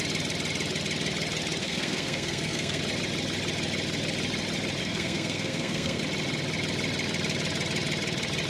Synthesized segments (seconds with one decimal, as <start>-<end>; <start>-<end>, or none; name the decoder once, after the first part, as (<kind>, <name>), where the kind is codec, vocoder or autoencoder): 1.6-2.8 (codec, SNAC); 4.8-6.0